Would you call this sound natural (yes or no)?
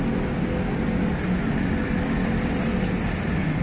yes